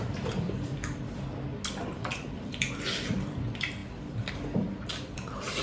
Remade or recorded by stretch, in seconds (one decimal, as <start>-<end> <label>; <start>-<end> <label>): 0.0-1.3 remade; 1.3-1.8 recorded; 1.8-3.8 remade; 3.8-4.3 recorded; 4.3-5.6 remade